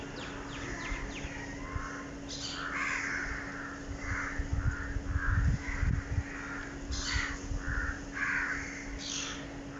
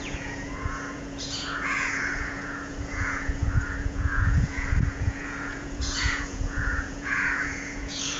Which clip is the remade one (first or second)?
second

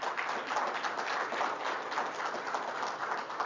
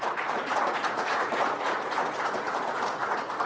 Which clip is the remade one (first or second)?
second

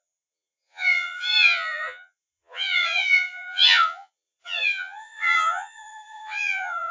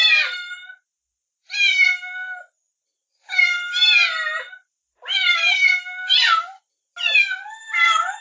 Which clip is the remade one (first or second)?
first